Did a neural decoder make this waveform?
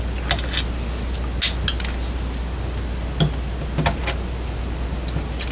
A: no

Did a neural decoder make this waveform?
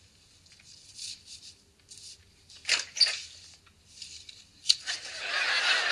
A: no